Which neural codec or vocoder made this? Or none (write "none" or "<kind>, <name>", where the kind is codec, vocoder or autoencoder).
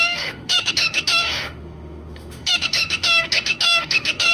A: autoencoder, DAC-VAE